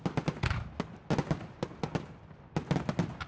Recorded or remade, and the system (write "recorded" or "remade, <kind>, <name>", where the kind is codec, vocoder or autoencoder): recorded